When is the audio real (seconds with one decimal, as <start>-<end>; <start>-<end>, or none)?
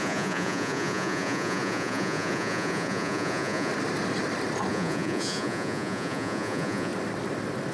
3.7-4.7; 6.9-7.7